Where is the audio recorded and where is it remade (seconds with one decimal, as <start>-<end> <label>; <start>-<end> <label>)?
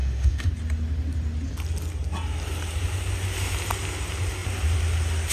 0.0-0.5 remade; 0.5-5.3 recorded